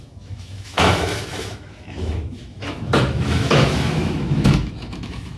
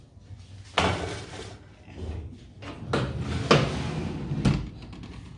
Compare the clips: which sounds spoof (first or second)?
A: first